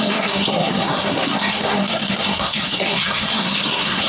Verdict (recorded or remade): remade